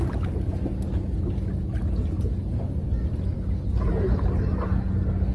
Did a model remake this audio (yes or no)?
no